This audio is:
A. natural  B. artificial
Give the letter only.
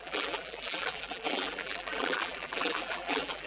B